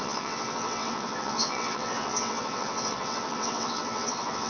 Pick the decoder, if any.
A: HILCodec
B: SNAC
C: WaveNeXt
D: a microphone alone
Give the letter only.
C